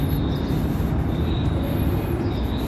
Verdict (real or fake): real